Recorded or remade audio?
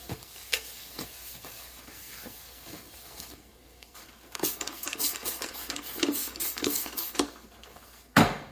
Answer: remade